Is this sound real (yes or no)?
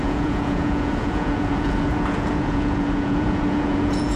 no